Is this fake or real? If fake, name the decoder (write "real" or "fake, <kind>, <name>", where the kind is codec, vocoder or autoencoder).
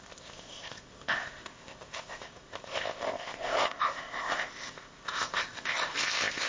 fake, codec, ZipCodec